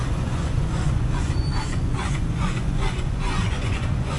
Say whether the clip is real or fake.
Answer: fake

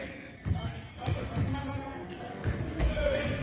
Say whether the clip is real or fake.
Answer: fake